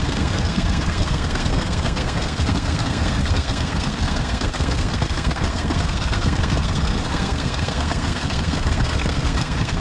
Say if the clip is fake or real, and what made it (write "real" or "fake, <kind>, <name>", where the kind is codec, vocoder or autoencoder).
fake, codec, SNAC